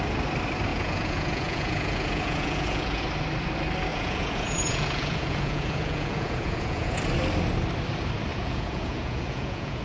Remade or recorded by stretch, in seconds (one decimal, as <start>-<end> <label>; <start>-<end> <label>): 0.0-0.7 recorded; 0.7-3.0 remade; 3.0-3.9 recorded; 3.9-7.0 remade; 7.0-8.3 recorded; 8.3-9.8 remade